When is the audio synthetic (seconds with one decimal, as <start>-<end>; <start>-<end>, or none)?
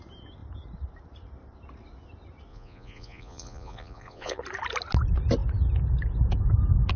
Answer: 2.5-4.4